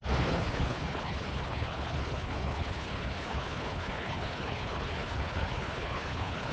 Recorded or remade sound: remade